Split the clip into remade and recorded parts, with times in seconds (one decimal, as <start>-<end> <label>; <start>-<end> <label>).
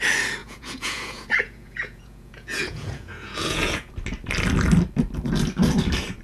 0.0-0.4 recorded; 0.4-3.9 remade; 3.9-6.2 recorded